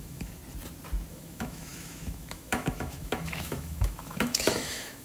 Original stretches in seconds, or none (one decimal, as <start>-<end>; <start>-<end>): 0.4-1.1